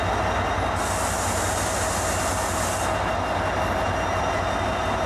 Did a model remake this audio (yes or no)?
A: no